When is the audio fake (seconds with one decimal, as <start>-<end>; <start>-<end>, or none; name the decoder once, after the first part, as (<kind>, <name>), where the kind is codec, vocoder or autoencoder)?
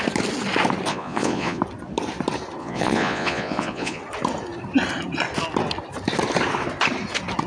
0.9-1.6 (vocoder, Vocos); 2.6-4.0